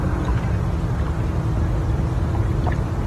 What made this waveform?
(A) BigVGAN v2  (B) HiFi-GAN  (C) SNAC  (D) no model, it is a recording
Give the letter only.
D